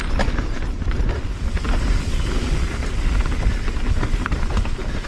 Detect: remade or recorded recorded